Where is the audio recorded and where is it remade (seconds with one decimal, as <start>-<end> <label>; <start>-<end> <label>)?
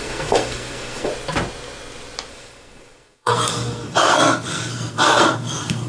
0.0-1.1 remade; 1.1-2.3 recorded; 2.3-5.9 remade